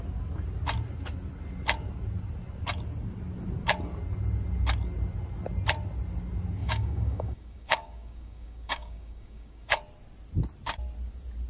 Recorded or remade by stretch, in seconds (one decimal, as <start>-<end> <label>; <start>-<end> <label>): 0.0-6.6 recorded; 6.6-9.8 remade; 9.8-11.5 recorded